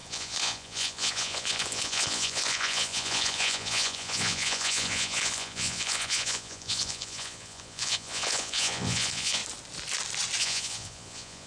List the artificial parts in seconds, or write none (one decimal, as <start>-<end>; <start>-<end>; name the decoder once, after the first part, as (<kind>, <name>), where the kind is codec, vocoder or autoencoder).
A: 0.0-9.4 (vocoder, Vocos); 10.4-11.5